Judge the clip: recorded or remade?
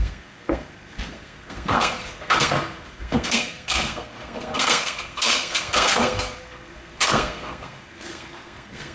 remade